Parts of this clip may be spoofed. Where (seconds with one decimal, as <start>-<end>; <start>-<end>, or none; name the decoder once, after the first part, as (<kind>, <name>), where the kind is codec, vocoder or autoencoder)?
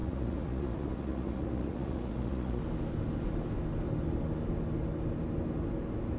0.0-2.6 (vocoder, Vocos)